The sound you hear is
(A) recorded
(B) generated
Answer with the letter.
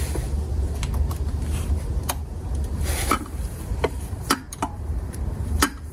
B